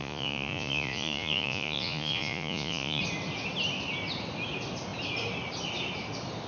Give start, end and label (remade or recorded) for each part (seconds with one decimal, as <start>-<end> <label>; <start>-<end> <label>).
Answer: 0.0-3.0 remade; 3.0-6.5 recorded